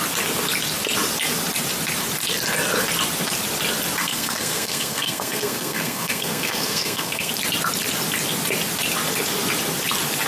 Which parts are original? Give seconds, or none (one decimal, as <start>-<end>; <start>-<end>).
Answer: 0.0-4.0; 7.3-10.3